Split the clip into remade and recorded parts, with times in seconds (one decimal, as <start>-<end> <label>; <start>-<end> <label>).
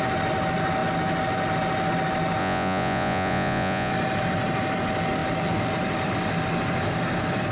0.0-2.4 recorded; 2.4-3.9 remade; 3.9-7.5 recorded